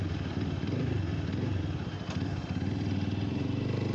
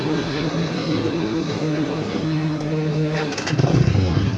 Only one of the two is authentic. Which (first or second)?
first